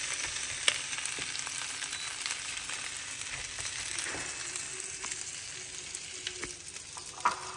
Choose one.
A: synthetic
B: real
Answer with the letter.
B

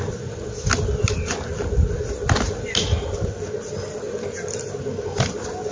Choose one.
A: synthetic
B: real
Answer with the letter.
B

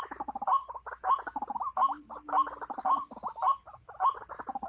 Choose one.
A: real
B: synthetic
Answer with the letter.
A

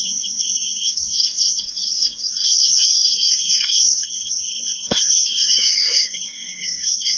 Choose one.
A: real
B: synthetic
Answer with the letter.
B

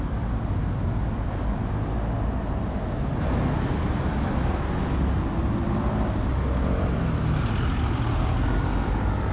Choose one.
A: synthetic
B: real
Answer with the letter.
B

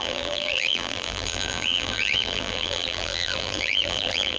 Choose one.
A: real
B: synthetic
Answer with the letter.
B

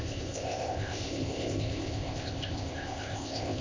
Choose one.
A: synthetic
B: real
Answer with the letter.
A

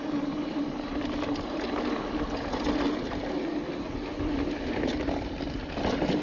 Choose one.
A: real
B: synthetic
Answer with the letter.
A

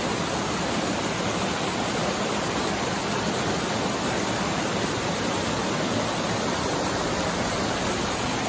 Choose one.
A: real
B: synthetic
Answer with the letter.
A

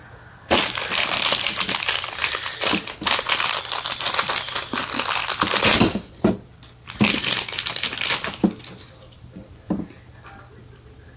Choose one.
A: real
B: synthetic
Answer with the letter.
A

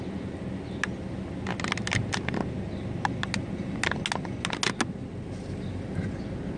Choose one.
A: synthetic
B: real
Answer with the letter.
B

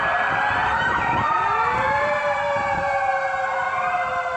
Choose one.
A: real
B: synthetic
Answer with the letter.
B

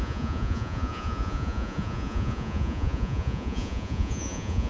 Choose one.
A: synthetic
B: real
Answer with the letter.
A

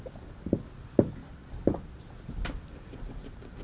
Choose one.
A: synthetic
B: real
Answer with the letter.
A